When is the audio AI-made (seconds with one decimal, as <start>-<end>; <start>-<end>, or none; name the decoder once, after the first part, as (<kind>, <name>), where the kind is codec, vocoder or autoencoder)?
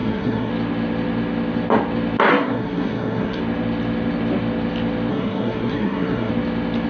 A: 0.0-0.5 (codec, SNAC); 2.3-3.4; 5.1-6.3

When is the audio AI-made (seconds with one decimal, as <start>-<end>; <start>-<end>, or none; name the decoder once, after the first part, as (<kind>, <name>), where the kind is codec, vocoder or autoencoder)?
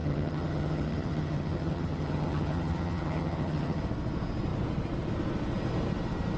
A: 0.0-3.8 (vocoder, HiFi-GAN)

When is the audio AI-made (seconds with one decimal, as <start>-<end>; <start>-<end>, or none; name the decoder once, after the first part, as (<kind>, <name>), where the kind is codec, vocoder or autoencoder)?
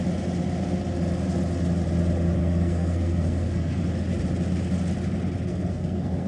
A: 2.4-3.8 (codec, SNAC); 5.5-6.3